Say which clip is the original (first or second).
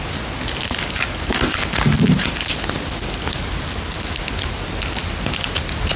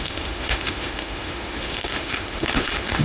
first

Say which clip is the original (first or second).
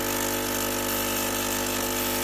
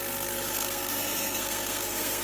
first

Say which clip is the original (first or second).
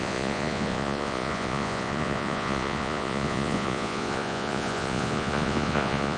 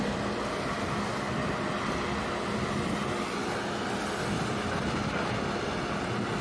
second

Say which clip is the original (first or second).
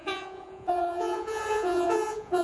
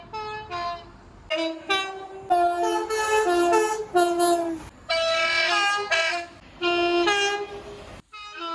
second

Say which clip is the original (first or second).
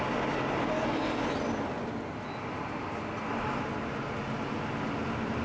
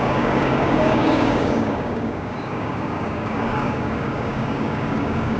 first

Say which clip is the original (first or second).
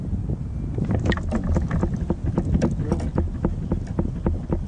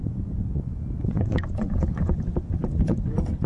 first